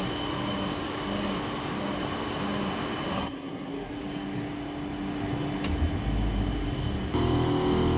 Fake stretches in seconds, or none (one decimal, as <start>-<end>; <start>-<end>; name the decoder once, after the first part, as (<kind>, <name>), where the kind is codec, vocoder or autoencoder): 3.1-3.9 (codec, SNAC)